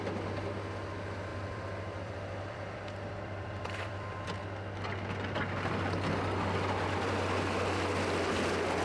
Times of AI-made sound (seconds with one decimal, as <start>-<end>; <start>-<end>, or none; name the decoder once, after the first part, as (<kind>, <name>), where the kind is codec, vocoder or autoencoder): 1.3-4.4 (vocoder, BigVGAN v2)